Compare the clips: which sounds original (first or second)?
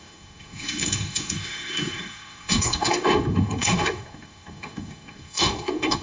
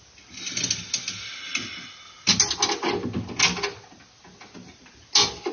second